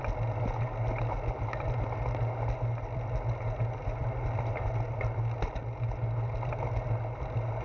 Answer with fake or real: real